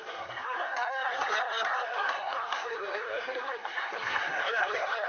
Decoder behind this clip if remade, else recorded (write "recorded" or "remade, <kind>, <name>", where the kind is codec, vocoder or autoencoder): remade, codec, SNAC